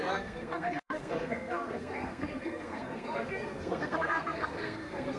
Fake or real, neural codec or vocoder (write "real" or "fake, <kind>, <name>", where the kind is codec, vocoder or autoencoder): fake, codec, SNAC